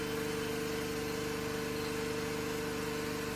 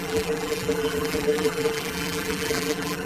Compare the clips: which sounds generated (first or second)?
second